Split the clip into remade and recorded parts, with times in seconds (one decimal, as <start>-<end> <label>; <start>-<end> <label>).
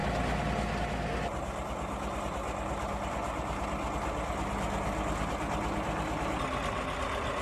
0.0-7.4 recorded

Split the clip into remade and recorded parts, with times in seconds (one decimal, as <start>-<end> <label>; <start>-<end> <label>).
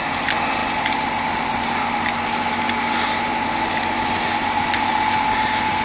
0.0-5.8 recorded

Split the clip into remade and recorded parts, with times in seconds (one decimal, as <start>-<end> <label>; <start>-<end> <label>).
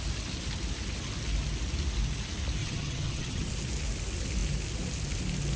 0.0-2.6 recorded; 2.6-3.5 remade; 3.5-5.6 recorded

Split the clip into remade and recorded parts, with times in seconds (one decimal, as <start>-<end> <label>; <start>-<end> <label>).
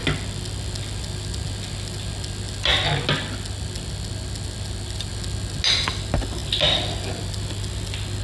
0.0-8.2 recorded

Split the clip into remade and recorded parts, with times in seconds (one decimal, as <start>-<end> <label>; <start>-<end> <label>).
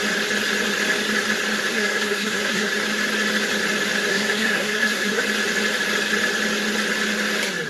0.0-1.7 recorded; 1.7-2.7 remade; 2.7-4.1 recorded; 4.1-5.2 remade; 5.2-7.7 recorded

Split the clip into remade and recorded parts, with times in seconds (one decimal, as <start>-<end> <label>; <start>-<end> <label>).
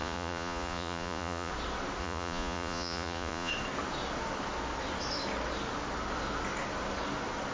0.0-1.5 remade; 1.5-2.0 recorded; 2.0-3.5 remade; 3.5-7.5 recorded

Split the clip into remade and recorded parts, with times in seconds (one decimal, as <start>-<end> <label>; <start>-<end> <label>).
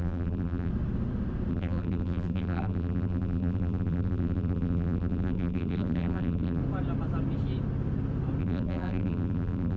0.0-0.7 remade; 0.7-1.5 recorded; 1.5-6.6 remade; 6.6-8.4 recorded; 8.4-9.8 remade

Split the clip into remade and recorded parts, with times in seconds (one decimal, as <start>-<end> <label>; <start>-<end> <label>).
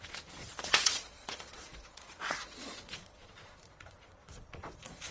0.0-5.1 remade